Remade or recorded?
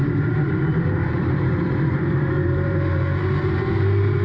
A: remade